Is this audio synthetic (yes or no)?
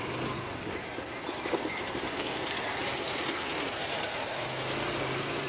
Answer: no